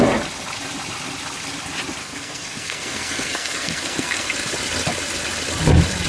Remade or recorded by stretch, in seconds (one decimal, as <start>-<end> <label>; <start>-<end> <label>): 0.0-2.0 recorded; 2.0-4.3 remade; 4.3-6.1 recorded